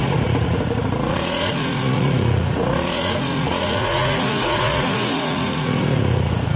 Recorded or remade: remade